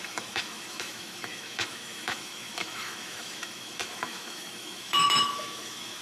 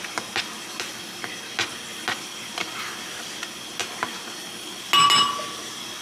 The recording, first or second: second